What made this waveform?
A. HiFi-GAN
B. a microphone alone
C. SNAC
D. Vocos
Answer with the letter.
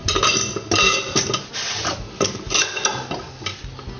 B